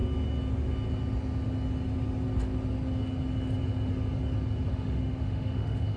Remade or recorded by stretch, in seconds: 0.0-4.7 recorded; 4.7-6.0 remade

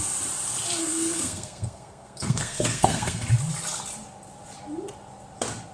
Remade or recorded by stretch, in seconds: 0.0-0.8 recorded; 0.8-3.2 remade; 3.2-5.7 recorded

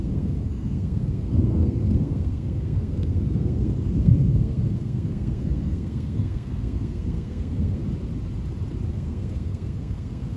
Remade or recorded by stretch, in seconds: 0.0-7.8 remade; 7.8-8.9 recorded; 8.9-10.4 remade

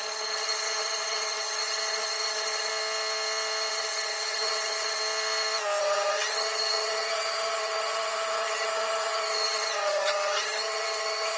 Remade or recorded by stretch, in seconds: 0.0-2.7 remade; 2.7-3.7 recorded; 3.7-5.0 remade; 5.0-5.8 recorded; 5.8-11.4 remade

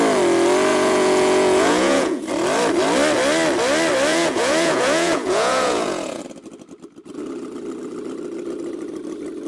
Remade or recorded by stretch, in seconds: 0.0-0.7 recorded; 0.7-2.2 remade; 2.2-4.1 recorded; 4.1-6.2 remade; 6.2-9.5 recorded

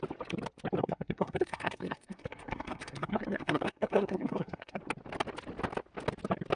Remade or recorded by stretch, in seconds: 0.0-0.8 recorded; 0.8-4.8 remade; 4.8-6.6 recorded